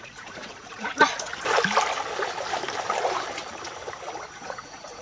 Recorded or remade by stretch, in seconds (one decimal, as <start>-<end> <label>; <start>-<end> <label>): 0.0-1.3 remade; 1.3-4.3 recorded; 4.3-5.0 remade